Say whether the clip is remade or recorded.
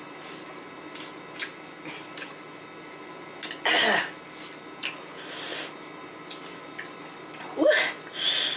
recorded